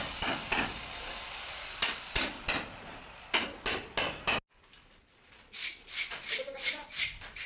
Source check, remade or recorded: recorded